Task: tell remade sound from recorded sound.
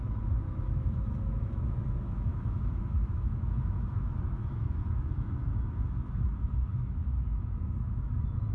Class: remade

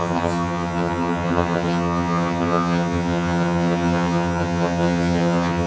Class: remade